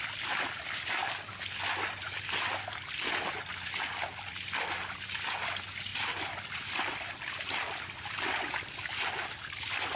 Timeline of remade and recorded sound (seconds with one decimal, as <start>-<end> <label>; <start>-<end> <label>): 0.0-1.0 remade; 1.0-2.3 recorded; 2.3-10.0 remade

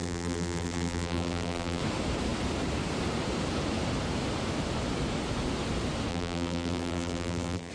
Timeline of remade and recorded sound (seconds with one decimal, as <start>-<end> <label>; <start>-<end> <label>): 0.0-1.8 remade; 1.8-6.1 recorded; 6.1-7.7 remade